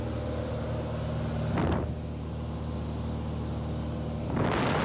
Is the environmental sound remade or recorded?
recorded